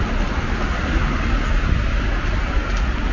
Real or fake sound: real